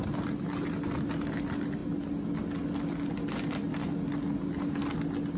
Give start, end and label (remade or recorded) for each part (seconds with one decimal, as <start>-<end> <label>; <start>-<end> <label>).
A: 0.0-5.4 recorded